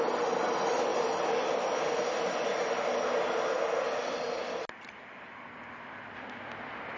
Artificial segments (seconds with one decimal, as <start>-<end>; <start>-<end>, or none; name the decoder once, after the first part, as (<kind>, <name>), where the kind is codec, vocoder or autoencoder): none